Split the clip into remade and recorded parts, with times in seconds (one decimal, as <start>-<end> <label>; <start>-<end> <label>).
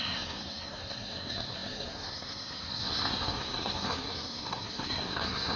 0.0-5.6 remade